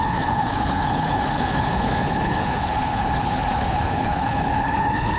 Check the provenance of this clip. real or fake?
fake